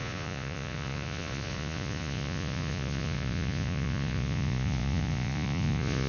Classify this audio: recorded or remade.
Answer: remade